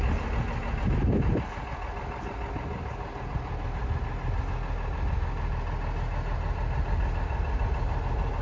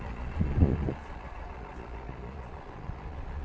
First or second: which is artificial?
second